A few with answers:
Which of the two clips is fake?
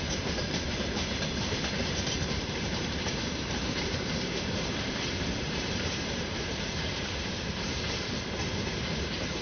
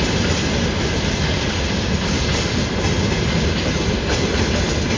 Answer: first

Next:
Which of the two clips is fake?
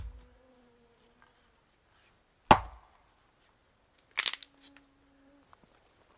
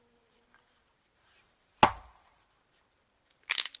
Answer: second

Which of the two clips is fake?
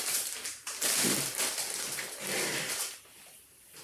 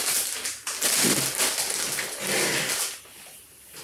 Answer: first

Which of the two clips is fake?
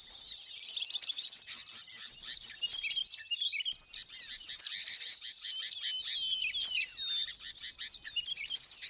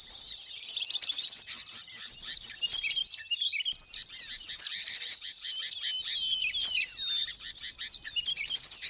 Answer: second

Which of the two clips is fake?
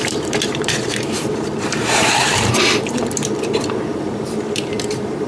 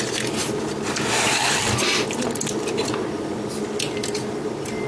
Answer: first